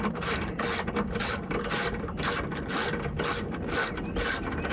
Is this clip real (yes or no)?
yes